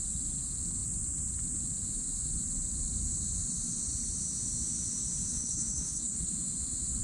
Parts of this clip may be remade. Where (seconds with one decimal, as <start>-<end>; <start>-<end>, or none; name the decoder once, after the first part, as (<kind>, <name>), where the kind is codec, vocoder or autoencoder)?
5.3-6.3 (codec, HILCodec)